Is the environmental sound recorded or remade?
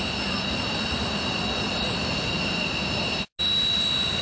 recorded